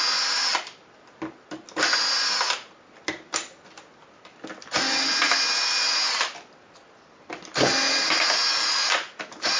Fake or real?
real